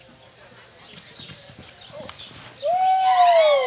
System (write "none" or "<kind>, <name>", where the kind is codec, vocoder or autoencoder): none